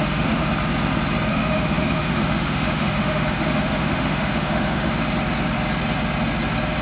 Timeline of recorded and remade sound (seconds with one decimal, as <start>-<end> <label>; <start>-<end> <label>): 0.0-0.5 remade; 0.5-1.3 recorded; 1.3-4.9 remade; 4.9-6.8 recorded